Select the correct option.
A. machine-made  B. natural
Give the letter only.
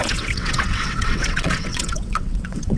A